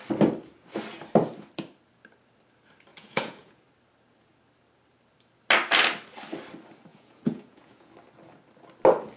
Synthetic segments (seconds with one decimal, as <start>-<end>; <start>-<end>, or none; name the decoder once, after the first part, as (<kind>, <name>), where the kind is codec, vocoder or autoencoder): 2.9-3.6 (vocoder, Vocos); 6.9-7.9